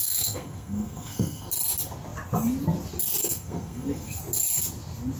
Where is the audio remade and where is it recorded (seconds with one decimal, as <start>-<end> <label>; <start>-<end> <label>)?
0.0-1.5 remade; 1.5-3.2 recorded; 3.2-4.2 remade; 4.2-5.2 recorded